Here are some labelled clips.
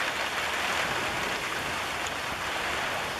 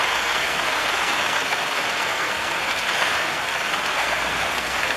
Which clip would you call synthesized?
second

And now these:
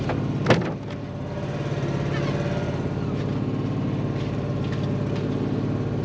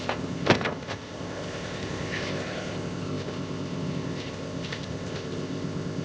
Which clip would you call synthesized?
second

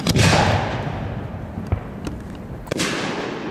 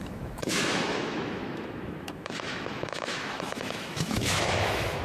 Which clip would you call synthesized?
second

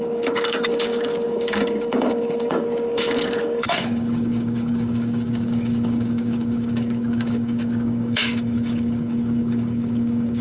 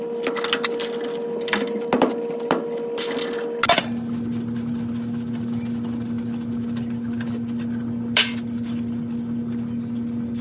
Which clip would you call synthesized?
first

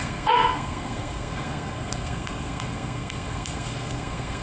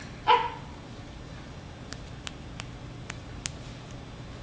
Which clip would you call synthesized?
first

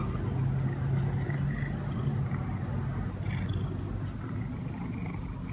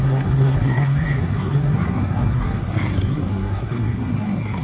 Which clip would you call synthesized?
second